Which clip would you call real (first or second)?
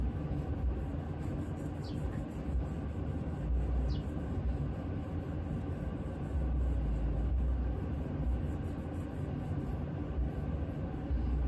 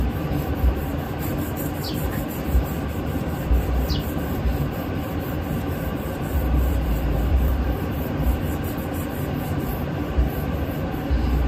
first